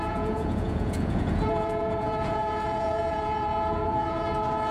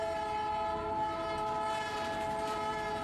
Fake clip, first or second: first